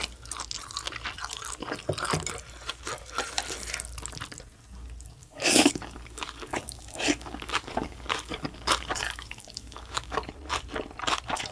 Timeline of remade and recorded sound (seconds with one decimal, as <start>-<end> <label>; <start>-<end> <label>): 0.0-5.2 recorded; 5.2-10.3 remade; 10.3-11.5 recorded